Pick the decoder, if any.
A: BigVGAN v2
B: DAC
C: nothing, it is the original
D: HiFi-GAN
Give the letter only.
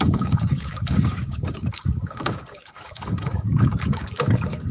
B